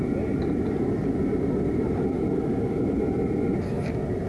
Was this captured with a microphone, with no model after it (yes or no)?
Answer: yes